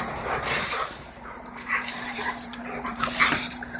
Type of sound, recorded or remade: remade